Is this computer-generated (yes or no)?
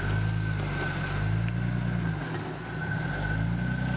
no